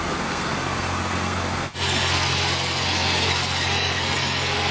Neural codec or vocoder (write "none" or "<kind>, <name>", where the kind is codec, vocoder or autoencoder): codec, SNAC